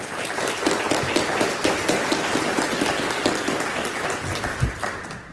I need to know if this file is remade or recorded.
recorded